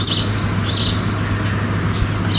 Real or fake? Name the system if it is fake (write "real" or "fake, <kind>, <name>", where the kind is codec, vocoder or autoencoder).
real